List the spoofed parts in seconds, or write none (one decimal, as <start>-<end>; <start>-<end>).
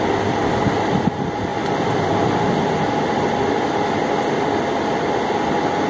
none